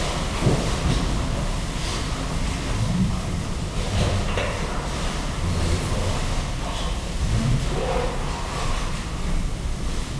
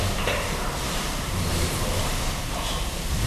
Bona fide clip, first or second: first